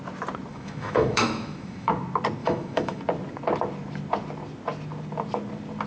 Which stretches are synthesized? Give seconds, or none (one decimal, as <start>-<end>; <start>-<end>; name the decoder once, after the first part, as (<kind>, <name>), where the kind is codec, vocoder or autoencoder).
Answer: 0.5-1.9 (autoencoder, DAC-VAE); 2.4-3.0